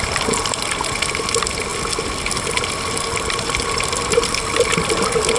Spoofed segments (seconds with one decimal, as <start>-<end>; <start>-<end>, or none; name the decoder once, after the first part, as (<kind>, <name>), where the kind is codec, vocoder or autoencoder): none